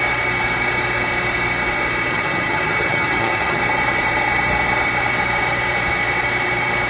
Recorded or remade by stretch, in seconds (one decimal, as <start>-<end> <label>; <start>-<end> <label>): 0.0-2.1 recorded; 2.1-3.6 remade; 3.6-6.9 recorded